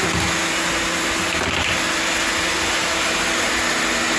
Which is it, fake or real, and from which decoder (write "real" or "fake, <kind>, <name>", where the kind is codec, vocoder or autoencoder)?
real